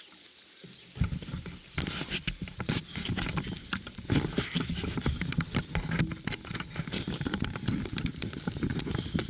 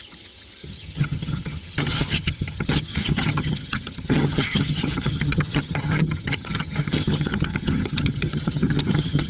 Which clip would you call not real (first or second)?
second